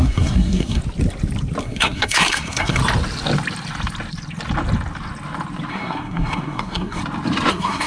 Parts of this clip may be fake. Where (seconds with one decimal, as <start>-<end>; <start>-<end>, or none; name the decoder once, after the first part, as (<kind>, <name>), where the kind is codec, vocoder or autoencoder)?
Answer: 0.0-0.8 (codec, SNAC); 1.6-2.8; 5.7-7.0; 7.5-7.9

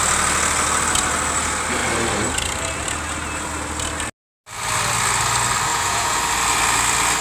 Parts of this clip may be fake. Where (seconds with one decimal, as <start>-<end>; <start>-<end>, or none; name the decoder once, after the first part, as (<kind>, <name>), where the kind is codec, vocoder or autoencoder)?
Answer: 5.7-6.2 (vocoder, Vocos)

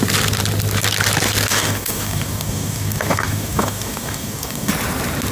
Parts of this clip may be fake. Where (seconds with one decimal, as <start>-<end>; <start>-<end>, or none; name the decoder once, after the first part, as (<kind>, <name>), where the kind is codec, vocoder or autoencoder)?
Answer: 1.5-4.7 (codec, DAC)